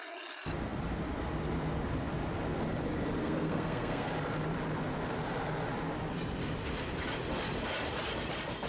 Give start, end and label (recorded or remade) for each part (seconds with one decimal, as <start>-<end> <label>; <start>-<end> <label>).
0.0-3.2 recorded; 3.2-4.1 remade; 4.1-8.7 recorded